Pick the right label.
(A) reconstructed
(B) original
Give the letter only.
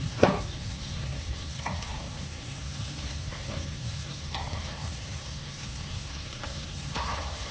A